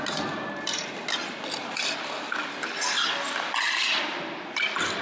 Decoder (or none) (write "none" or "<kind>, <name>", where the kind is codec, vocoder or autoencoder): none